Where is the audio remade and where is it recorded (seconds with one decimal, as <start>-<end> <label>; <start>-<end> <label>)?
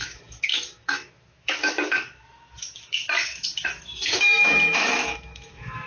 0.0-5.9 remade